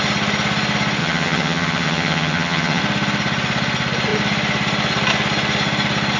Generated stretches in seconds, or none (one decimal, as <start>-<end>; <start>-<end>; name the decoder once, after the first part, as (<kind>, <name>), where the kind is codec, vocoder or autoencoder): 1.0-2.8 (vocoder, HiFi-GAN)

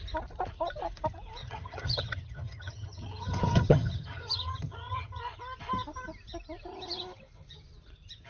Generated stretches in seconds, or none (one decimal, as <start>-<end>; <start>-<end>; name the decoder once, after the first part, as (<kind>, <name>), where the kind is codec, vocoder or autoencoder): 1.4-5.2 (vocoder, HiFi-GAN)

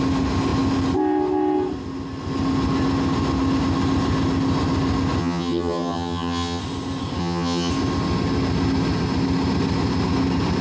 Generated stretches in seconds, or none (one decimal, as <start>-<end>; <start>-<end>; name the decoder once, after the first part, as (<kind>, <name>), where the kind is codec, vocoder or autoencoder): 5.2-6.6 (vocoder, HiFi-GAN); 7.2-7.7

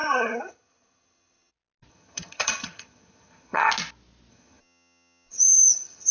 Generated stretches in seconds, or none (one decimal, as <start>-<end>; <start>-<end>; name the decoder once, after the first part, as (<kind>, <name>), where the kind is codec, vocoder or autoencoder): 0.0-1.5 (vocoder, HiFi-GAN); 1.9-3.7; 4.3-6.1

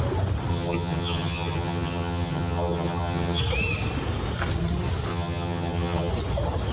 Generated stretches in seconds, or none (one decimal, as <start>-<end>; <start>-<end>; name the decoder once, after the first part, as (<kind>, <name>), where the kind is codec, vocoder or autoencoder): 0.5-3.4 (vocoder, HiFi-GAN); 5.1-6.1

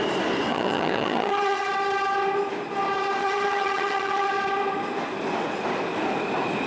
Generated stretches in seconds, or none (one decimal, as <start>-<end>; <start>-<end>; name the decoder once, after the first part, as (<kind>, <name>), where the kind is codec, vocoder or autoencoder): 0.5-1.7 (vocoder, HiFi-GAN); 3.2-4.3

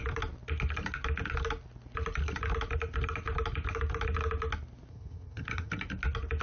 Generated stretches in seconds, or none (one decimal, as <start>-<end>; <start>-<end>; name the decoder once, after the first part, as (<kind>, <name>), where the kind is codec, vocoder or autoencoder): 4.9-5.7 (vocoder, HiFi-GAN)

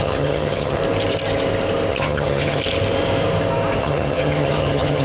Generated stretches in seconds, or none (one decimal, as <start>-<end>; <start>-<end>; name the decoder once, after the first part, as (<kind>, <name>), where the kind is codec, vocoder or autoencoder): 0.0-0.8 (vocoder, HiFi-GAN); 1.9-2.6; 3.8-5.0